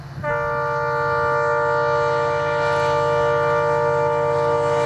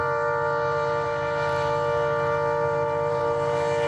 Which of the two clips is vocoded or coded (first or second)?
second